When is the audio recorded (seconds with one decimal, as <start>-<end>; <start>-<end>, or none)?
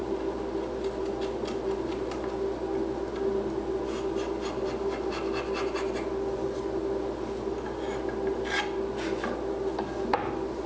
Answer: 0.0-10.7